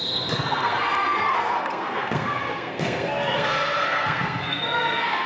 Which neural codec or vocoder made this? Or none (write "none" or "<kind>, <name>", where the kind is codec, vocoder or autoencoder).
codec, SNAC